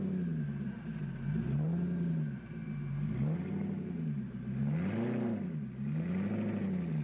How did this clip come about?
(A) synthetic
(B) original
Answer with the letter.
B